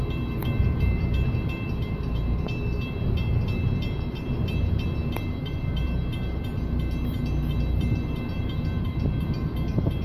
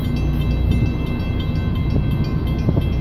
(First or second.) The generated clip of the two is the first